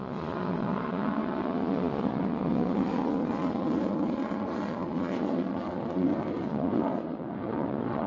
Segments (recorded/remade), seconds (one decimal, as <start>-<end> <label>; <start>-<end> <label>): 0.0-8.1 remade